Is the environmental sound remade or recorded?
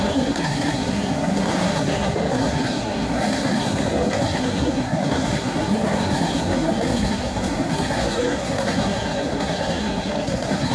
remade